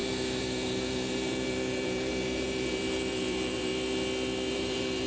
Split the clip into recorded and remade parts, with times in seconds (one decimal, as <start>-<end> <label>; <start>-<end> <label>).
0.0-3.7 remade; 3.7-4.5 recorded; 4.5-5.1 remade